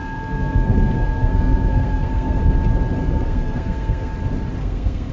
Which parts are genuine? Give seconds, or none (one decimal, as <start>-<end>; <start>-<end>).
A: 2.4-3.0; 4.1-4.6